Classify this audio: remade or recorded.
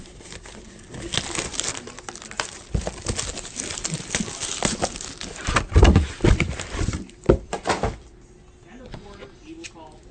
recorded